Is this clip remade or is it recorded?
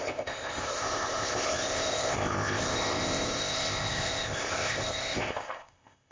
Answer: remade